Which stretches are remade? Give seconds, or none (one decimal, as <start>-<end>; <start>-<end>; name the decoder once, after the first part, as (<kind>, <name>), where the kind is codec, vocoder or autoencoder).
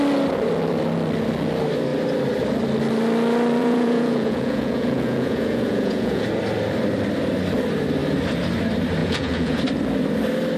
3.6-6.2 (vocoder, Vocos); 9.0-9.6